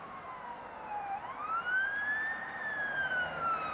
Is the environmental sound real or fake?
fake